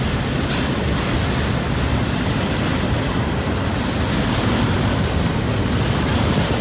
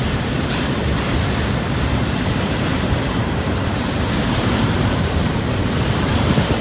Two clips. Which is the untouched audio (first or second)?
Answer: first